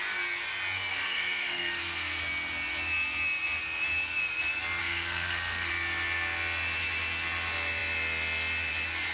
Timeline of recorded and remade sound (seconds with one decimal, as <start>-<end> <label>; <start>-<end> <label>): 0.0-0.9 recorded; 0.9-2.2 remade; 2.2-4.8 recorded; 4.8-5.7 remade; 5.7-9.1 recorded